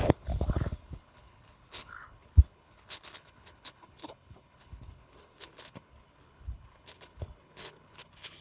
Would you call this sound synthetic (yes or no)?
yes